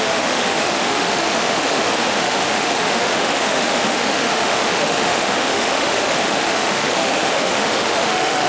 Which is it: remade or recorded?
remade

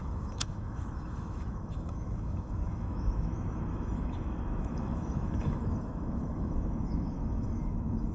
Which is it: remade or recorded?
remade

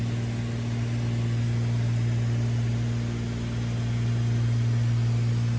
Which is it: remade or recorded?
recorded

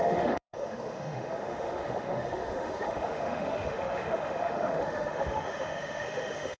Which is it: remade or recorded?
remade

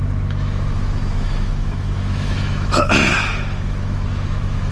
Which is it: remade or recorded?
remade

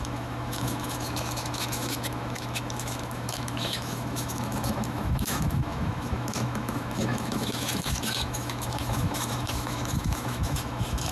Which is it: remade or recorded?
remade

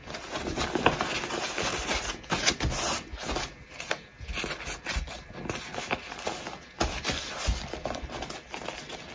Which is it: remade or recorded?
recorded